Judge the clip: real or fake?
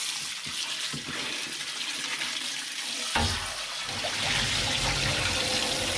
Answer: real